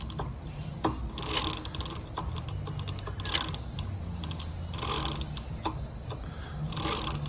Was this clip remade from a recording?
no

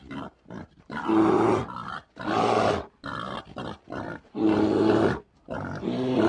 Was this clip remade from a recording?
no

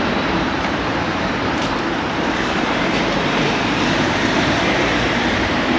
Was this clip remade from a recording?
yes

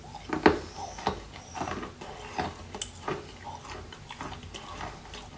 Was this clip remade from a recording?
no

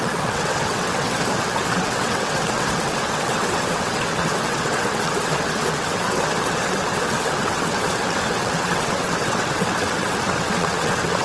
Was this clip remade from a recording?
yes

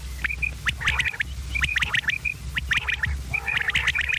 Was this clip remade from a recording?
no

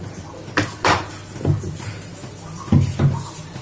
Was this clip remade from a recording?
no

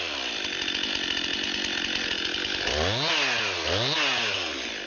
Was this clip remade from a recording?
no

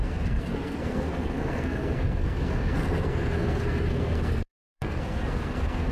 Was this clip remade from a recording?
yes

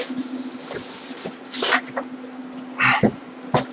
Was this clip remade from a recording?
no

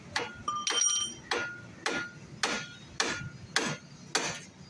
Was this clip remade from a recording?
no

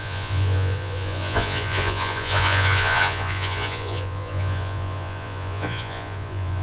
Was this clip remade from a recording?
yes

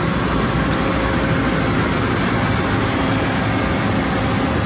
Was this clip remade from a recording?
no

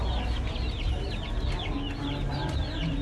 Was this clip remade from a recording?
no